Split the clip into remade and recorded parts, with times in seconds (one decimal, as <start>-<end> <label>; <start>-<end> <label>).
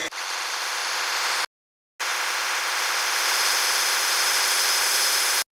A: 0.0-5.6 recorded